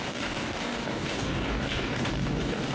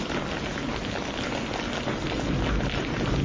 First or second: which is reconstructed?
first